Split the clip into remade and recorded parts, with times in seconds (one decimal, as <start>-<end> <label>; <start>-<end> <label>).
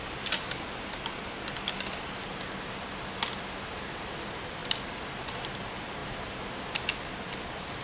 0.0-7.8 recorded